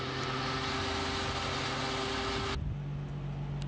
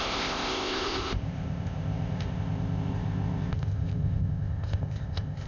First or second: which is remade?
second